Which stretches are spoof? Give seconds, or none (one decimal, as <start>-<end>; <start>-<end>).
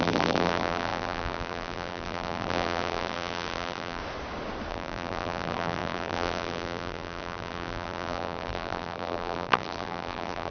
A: 0.0-4.0; 4.7-10.5